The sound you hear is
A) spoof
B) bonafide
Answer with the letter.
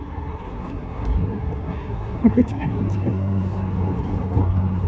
A